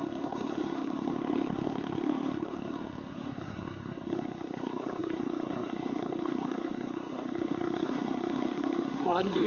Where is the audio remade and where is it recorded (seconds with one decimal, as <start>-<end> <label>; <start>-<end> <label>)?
0.0-9.5 remade